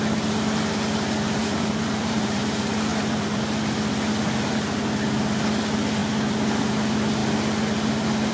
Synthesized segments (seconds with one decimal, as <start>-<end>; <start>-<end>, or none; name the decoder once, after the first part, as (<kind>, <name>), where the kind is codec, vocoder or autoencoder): 1.4-2.4 (vocoder, BigVGAN v2); 2.9-3.4